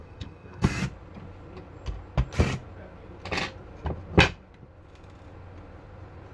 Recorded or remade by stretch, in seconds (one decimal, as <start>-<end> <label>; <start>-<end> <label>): 0.0-0.8 remade; 0.8-6.3 recorded